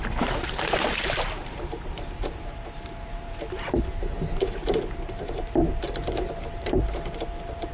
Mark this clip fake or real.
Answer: fake